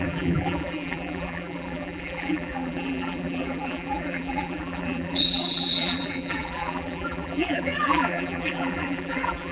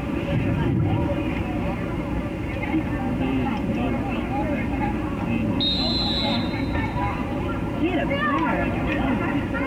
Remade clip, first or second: first